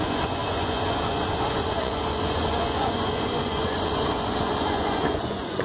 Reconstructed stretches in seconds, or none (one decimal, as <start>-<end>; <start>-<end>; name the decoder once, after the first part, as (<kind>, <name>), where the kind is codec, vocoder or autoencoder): 0.0-5.6 (vocoder, Vocos)